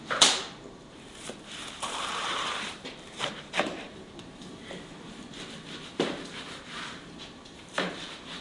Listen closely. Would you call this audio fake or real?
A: fake